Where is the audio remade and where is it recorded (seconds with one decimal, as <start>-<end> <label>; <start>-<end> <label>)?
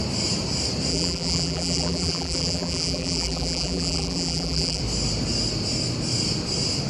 0.0-0.9 recorded; 0.9-4.8 remade; 4.8-6.9 recorded